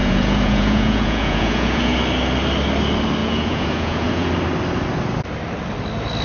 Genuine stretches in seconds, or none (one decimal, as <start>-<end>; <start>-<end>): 2.0-3.2; 4.3-6.2